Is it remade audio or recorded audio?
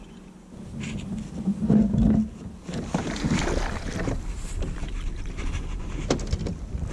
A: recorded